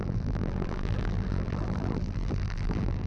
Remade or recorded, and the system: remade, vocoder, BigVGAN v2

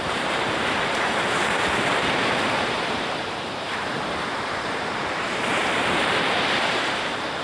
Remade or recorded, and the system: remade, vocoder, BigVGAN v2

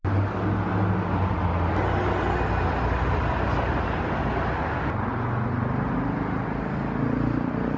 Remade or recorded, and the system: recorded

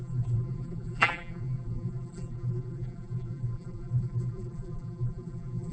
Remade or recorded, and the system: remade, vocoder, BigVGAN v2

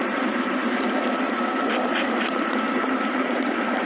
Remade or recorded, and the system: remade, vocoder, BigVGAN v2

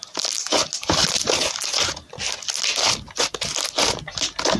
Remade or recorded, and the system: recorded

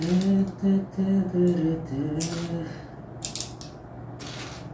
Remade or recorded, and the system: recorded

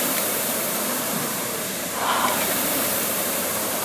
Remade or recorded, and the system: remade, vocoder, BigVGAN v2